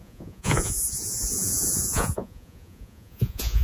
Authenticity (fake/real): fake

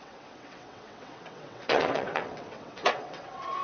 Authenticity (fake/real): fake